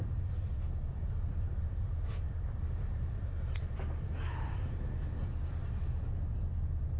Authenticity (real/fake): fake